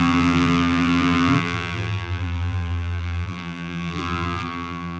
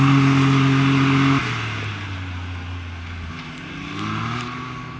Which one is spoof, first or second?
first